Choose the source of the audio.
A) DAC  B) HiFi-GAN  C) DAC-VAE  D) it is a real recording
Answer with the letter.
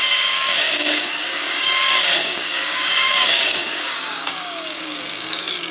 A